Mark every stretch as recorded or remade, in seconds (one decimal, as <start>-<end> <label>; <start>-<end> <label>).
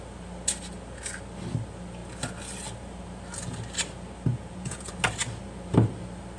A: 0.0-4.3 recorded; 4.3-4.9 remade; 4.9-6.4 recorded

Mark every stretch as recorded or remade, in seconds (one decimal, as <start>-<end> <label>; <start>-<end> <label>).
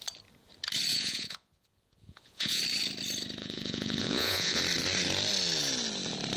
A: 0.0-0.9 recorded; 0.9-2.6 remade; 2.6-3.4 recorded; 3.4-4.6 remade; 4.6-6.4 recorded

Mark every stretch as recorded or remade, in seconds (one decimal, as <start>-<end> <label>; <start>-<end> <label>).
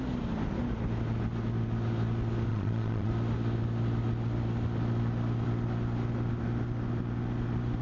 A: 0.0-2.5 recorded; 2.5-3.1 remade; 3.1-7.8 recorded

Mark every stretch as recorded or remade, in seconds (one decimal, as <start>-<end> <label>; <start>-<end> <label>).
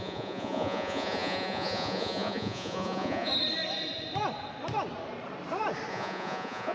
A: 0.0-3.3 remade; 3.3-5.9 recorded; 5.9-6.7 remade